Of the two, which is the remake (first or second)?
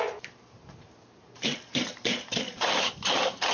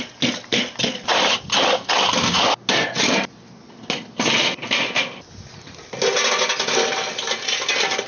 first